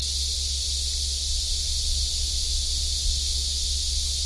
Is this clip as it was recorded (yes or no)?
yes